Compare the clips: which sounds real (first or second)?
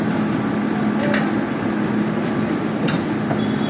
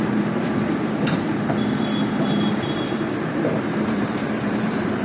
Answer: first